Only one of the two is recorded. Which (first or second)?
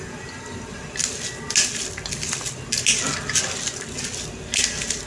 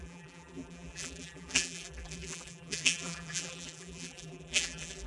first